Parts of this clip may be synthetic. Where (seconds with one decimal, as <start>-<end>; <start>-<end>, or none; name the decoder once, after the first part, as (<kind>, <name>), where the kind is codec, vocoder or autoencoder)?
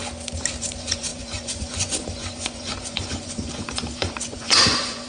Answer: 0.6-5.1 (vocoder, Vocos)